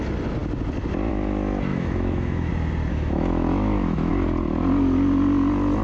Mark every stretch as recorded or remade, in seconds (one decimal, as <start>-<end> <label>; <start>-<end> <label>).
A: 0.0-1.7 recorded; 1.7-2.5 remade; 2.5-2.9 recorded; 2.9-4.1 remade; 4.1-5.8 recorded